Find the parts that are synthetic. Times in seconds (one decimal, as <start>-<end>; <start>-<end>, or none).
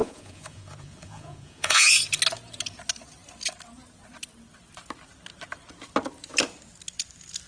0.0-1.9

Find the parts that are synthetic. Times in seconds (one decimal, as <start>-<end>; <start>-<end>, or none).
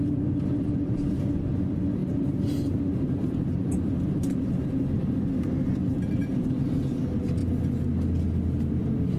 2.0-4.2; 5.8-6.5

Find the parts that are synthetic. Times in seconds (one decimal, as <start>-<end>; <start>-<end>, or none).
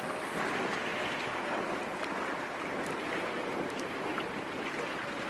0.9-4.1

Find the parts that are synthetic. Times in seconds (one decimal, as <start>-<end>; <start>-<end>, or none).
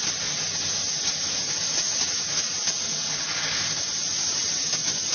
4.4-5.1